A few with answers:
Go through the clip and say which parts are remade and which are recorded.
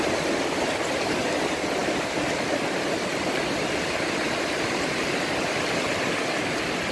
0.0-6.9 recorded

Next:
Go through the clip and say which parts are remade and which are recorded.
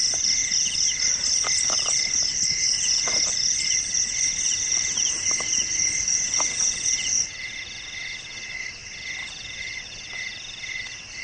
0.0-11.2 recorded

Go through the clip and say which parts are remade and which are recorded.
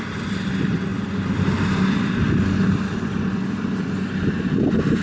0.0-5.0 recorded